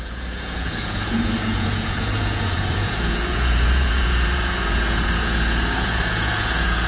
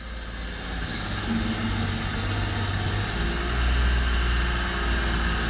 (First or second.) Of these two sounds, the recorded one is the second